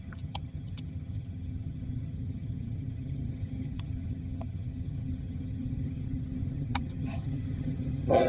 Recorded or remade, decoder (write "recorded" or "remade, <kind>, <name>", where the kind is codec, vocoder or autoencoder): remade, vocoder, HiFi-GAN